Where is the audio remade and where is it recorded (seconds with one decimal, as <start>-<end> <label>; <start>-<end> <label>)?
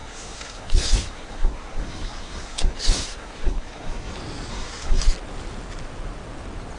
0.0-4.1 remade; 4.1-4.5 recorded; 4.5-5.0 remade; 5.0-6.8 recorded